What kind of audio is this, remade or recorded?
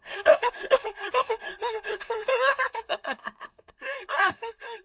remade